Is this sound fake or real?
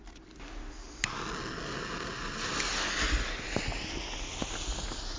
real